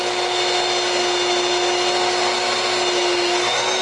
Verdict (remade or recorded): recorded